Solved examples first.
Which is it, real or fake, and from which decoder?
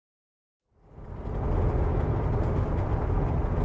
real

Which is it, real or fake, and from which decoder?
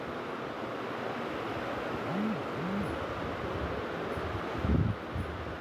real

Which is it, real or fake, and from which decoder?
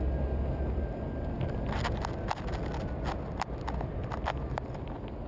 real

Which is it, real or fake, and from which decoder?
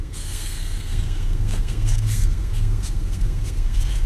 fake, codec, SNAC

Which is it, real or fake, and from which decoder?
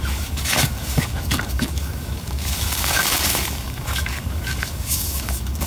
fake, codec, DAC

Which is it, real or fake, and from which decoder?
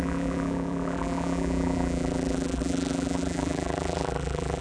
fake, vocoder, BigVGAN v2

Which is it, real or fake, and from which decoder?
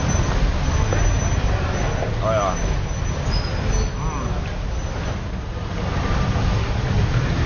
real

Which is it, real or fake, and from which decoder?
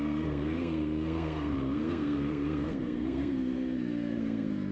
fake, codec, SNAC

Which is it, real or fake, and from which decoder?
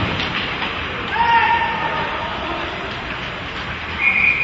real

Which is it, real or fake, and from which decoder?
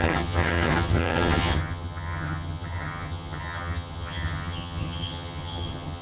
fake, vocoder, HiFi-GAN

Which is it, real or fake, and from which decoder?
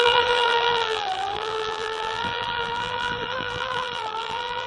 fake, vocoder, BigVGAN v2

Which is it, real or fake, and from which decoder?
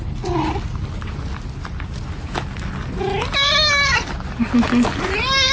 real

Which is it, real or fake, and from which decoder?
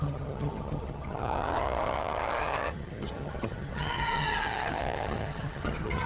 fake, vocoder, HiFi-GAN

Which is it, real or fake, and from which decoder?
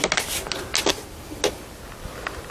real